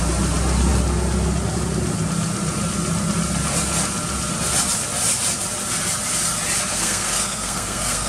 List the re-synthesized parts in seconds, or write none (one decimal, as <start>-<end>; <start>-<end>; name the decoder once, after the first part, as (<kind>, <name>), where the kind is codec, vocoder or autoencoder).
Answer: 6.7-8.1 (codec, SNAC)